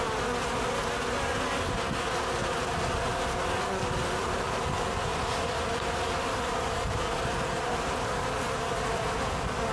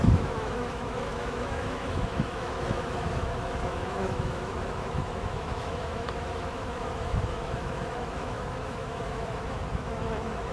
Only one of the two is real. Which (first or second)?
first